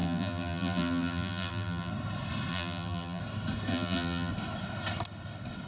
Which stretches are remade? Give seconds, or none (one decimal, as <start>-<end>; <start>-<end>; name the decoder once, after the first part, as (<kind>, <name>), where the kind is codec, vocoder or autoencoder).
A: 0.0-1.9 (vocoder, BigVGAN v2); 2.5-3.2; 3.7-4.3